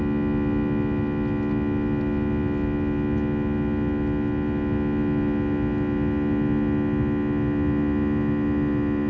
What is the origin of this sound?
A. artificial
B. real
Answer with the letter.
B